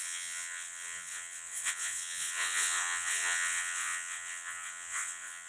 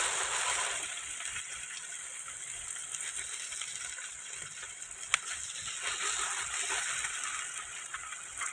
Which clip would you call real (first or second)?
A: second